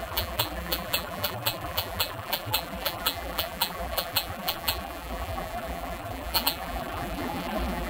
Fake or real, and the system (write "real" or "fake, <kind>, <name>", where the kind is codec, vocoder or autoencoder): fake, vocoder, BigVGAN v2